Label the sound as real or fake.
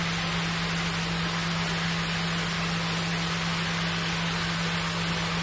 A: real